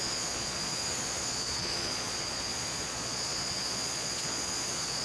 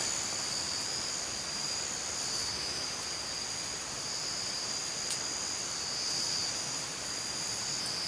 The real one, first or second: second